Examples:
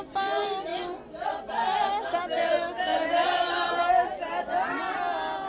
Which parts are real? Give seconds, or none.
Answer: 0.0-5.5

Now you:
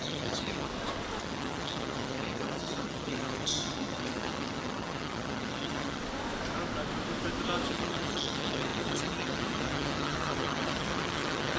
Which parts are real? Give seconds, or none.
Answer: 0.7-1.2; 6.0-7.7